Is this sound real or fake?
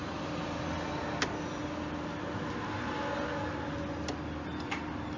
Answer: real